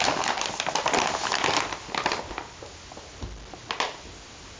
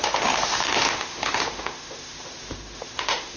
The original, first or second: first